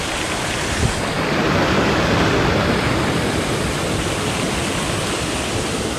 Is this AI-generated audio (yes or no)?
no